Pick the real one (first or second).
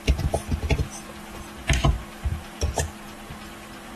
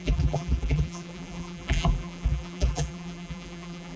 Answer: first